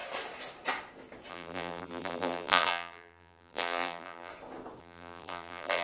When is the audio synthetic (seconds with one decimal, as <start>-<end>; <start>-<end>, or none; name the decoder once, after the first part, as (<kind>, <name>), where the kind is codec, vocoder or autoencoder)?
1.3-4.3 (vocoder, BigVGAN v2); 4.8-5.8